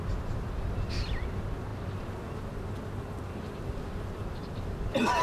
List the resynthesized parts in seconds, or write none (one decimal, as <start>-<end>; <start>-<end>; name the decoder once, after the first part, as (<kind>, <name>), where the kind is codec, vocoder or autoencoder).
none